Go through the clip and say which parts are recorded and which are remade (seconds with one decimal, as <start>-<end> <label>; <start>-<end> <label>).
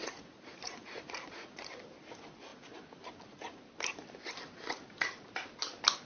0.0-1.7 remade; 1.7-6.1 recorded